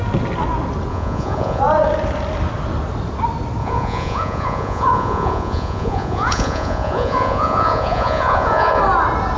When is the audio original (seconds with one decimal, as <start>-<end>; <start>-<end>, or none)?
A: 0.0-0.9; 1.6-3.6; 8.8-9.4